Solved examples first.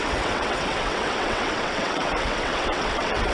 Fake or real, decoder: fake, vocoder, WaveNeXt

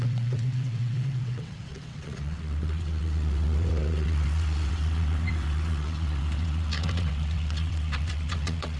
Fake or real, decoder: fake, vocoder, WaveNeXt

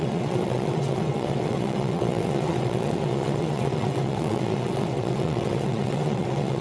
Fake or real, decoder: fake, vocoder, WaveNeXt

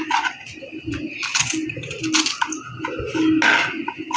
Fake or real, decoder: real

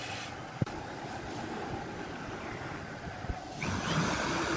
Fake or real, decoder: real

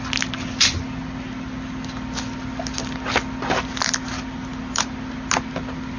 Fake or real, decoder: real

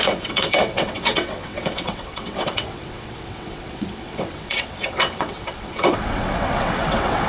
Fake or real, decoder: fake, vocoder, WaveNeXt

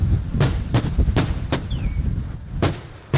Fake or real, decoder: real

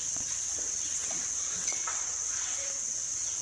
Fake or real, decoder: fake, vocoder, WaveNeXt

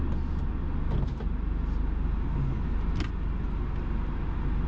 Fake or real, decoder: real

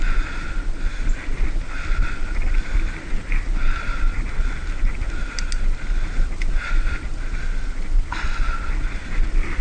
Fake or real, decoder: real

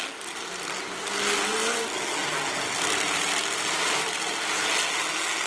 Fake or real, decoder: real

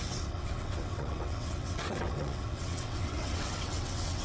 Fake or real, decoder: fake, vocoder, WaveNeXt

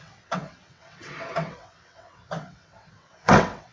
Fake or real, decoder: fake, vocoder, WaveNeXt